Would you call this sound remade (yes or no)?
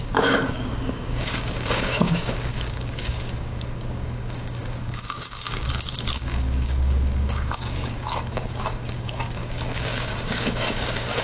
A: yes